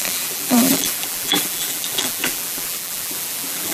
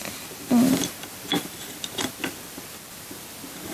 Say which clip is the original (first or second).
second